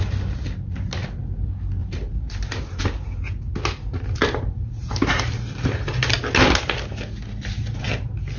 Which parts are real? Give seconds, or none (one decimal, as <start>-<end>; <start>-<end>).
0.0-1.8; 2.8-4.2; 6.2-8.4